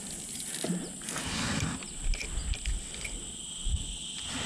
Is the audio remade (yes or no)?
no